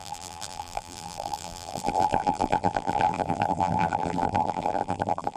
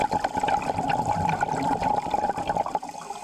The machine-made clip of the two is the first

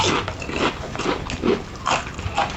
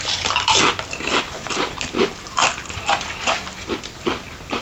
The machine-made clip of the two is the second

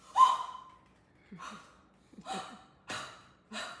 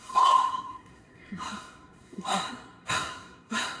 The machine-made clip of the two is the second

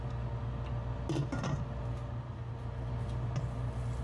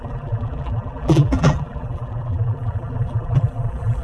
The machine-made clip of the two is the second